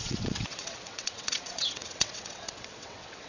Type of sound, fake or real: fake